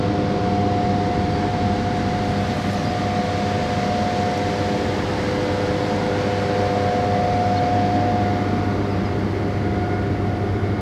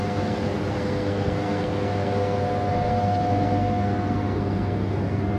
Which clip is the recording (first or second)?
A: first